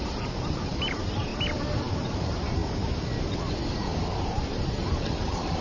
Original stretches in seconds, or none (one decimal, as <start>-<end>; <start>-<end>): 1.3-2.1; 2.6-4.4